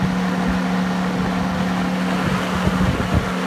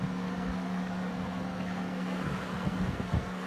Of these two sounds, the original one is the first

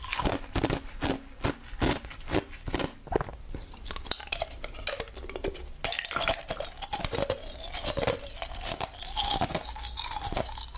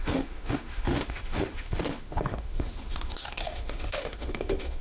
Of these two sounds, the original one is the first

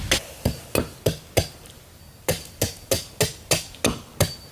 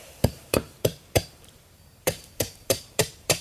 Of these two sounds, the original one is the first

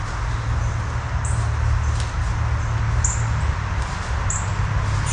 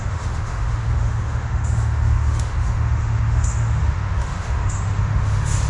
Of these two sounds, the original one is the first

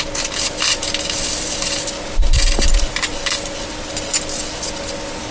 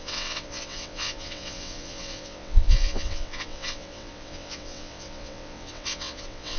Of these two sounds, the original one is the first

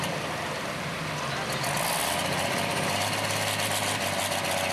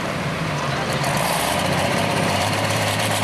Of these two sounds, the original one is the first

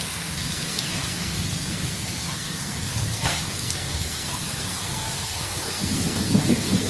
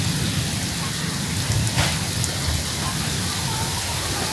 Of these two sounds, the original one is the second